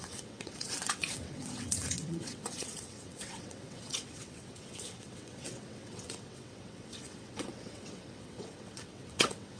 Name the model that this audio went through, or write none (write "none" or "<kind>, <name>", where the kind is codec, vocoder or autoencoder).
vocoder, WaveNeXt